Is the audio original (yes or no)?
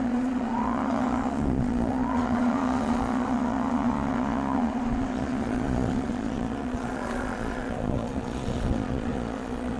no